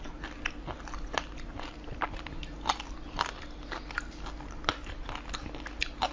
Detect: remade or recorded recorded